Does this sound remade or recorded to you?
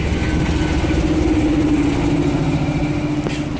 recorded